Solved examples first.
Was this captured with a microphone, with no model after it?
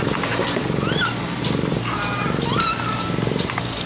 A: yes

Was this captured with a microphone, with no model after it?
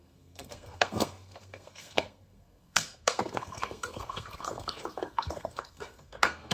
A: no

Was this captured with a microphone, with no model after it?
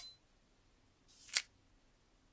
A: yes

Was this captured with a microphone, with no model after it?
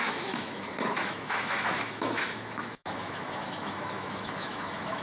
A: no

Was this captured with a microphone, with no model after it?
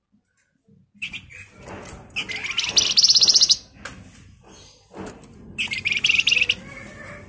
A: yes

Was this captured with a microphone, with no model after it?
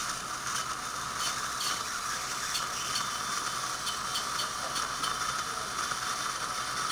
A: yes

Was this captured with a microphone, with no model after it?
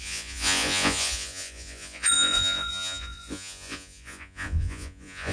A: no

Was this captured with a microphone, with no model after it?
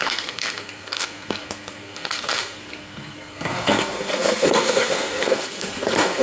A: no